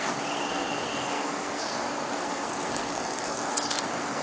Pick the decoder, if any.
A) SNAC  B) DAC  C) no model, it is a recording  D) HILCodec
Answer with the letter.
A